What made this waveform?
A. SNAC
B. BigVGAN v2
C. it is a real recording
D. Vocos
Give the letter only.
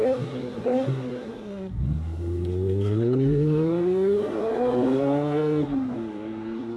A